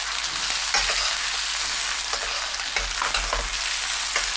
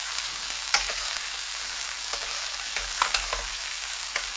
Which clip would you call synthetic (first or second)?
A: second